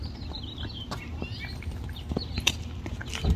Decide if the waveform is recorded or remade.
recorded